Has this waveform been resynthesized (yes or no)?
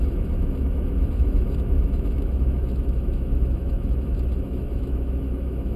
yes